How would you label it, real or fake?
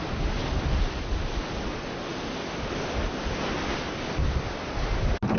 real